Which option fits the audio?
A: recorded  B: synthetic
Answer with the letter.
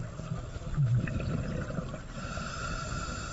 A